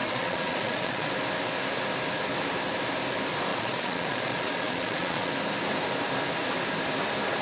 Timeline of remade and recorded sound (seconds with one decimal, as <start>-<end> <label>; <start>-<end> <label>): 0.0-1.1 remade; 1.1-3.5 recorded; 3.5-5.3 remade; 5.3-7.4 recorded